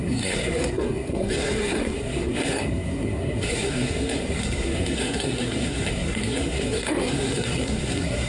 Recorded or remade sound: remade